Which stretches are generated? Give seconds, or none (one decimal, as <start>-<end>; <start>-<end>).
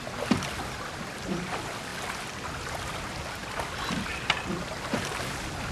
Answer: none